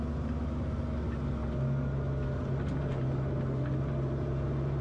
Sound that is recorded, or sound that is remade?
recorded